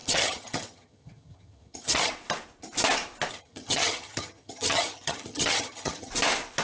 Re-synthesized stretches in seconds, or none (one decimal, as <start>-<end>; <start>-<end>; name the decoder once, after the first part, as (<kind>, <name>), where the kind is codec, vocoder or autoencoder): 0.0-2.1 (vocoder, HiFi-GAN); 3.3-6.1

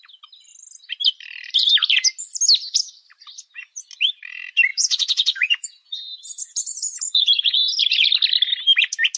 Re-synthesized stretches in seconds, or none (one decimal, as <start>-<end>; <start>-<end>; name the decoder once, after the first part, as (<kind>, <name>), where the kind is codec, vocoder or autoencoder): 4.7-8.1 (vocoder, Vocos)

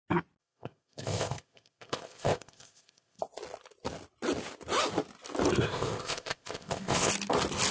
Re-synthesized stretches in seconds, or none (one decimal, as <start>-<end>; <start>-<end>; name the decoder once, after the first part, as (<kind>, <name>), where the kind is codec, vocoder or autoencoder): 0.4-3.2 (codec, ZipCodec); 5.6-7.1